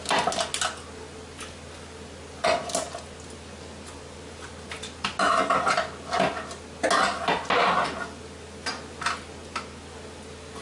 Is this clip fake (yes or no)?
no